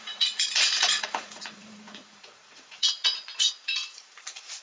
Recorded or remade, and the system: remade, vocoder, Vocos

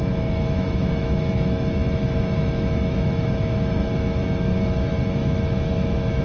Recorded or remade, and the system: remade, autoencoder, DAC-VAE